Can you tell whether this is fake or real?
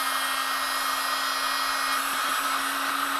real